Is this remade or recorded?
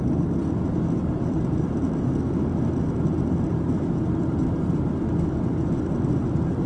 recorded